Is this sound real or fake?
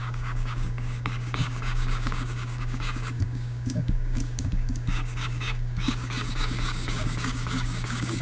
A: fake